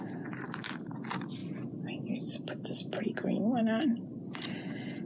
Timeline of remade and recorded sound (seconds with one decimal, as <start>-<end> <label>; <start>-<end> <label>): 0.0-5.1 recorded

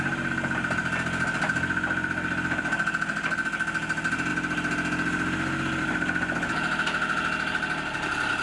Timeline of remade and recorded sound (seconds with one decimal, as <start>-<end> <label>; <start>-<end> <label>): 0.0-8.4 recorded

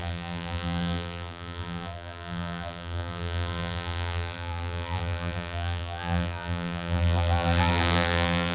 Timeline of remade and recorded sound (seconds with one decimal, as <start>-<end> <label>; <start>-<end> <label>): 0.0-8.5 remade

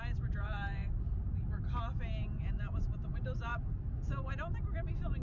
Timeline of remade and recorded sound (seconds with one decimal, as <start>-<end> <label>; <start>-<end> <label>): 0.0-5.2 recorded